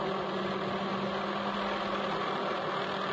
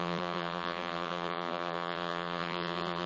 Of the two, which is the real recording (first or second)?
first